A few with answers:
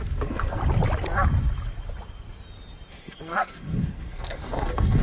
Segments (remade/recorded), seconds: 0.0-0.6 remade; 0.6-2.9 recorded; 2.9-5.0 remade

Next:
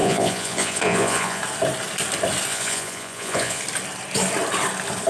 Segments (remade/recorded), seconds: 0.0-1.4 remade; 1.4-2.5 recorded; 2.5-3.6 remade; 3.6-5.1 recorded

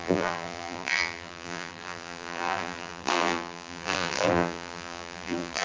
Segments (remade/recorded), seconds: 0.0-5.6 remade

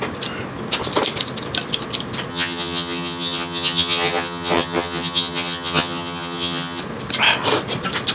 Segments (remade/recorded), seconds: 0.0-2.3 recorded; 2.3-6.8 remade; 6.8-8.1 recorded

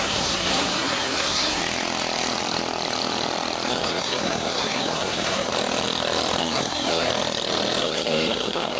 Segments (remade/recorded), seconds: 0.0-1.6 remade; 1.6-3.7 recorded; 3.7-5.5 remade; 5.5-6.4 recorded; 6.4-7.1 remade; 7.1-7.8 recorded; 7.8-8.8 remade